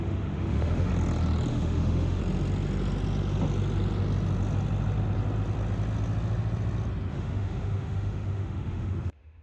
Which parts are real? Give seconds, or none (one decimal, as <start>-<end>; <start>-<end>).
0.9-1.5; 2.2-7.1